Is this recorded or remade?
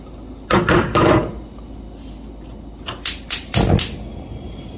recorded